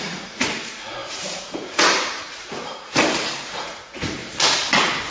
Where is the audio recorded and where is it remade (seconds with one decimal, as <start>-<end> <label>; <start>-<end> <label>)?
0.0-3.0 remade; 3.0-3.6 recorded; 3.6-4.2 remade; 4.2-5.1 recorded